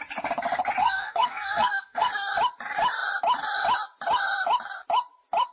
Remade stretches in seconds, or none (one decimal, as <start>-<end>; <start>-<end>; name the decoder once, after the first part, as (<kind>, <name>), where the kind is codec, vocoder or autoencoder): 0.8-2.1 (codec, SNAC)